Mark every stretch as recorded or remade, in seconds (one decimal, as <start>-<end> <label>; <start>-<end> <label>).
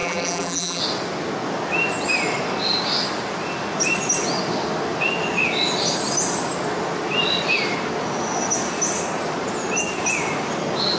0.0-0.8 remade; 0.8-11.0 recorded